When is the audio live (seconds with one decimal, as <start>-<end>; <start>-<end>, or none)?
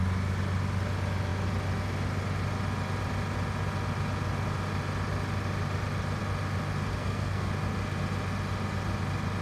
0.0-6.9; 7.5-9.4